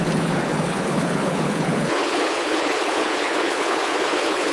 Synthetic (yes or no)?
yes